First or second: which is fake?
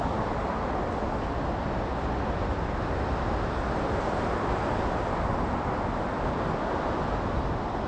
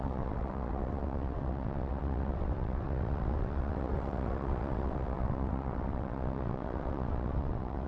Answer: second